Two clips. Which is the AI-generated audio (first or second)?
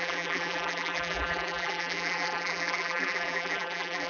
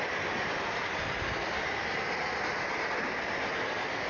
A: first